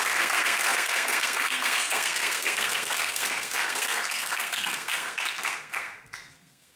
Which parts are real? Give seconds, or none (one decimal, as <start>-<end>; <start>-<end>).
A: none